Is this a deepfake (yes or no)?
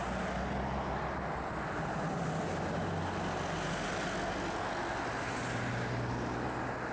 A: no